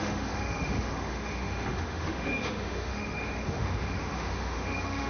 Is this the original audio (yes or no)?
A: no